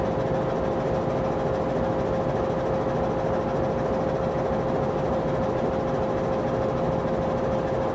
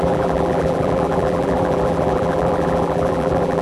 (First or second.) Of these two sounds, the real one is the first